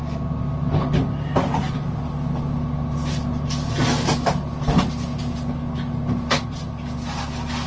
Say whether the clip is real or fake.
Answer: real